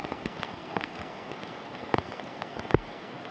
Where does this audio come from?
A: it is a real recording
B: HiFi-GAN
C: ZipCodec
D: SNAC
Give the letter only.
D